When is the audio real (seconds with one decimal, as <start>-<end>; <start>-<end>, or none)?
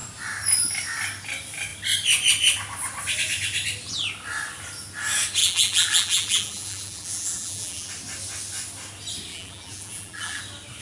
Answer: 0.0-5.4; 7.9-9.3; 10.4-10.8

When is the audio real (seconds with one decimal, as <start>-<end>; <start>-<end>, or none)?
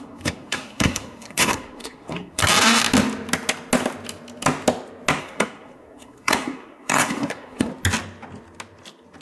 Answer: 2.4-5.2; 7.7-9.2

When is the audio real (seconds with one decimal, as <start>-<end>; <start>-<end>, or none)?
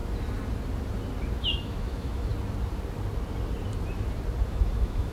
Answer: 0.0-1.4; 2.3-4.5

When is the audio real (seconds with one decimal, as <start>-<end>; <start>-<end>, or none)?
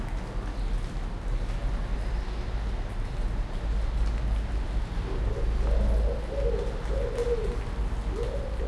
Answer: 0.0-8.7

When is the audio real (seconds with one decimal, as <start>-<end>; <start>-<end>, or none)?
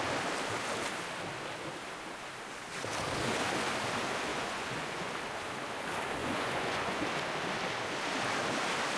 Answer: 0.0-4.3; 5.1-6.2; 7.0-9.0